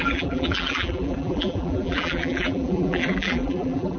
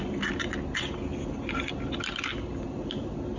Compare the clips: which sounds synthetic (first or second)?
first